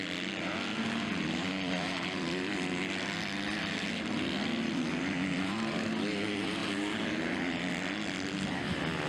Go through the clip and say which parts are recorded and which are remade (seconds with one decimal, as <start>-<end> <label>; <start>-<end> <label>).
0.0-9.1 recorded